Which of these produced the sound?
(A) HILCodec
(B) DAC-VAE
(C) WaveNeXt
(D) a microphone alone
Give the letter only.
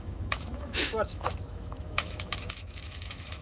B